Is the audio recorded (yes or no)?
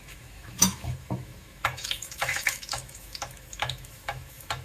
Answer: no